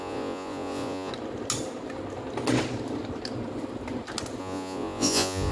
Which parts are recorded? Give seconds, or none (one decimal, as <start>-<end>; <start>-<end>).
1.1-4.4

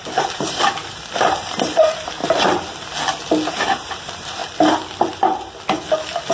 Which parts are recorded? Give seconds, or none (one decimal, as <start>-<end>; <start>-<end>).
2.2-3.5; 4.4-6.3

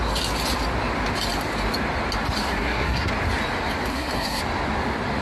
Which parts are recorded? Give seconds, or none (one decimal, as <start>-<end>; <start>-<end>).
0.0-2.4; 3.1-3.9; 4.4-5.2